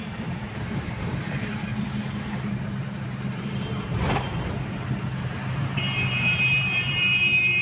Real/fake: fake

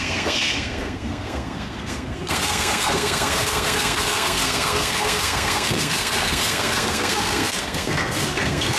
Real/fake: fake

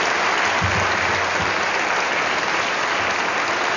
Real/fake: real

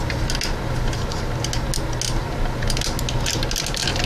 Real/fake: real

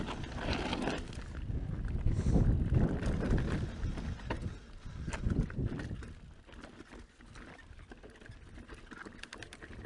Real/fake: real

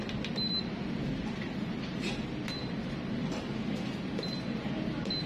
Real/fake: real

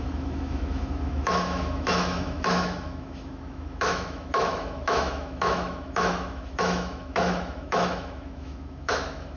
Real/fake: fake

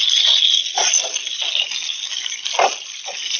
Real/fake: real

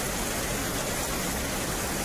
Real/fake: real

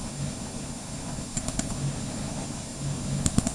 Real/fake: fake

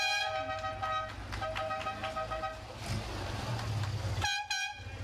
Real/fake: real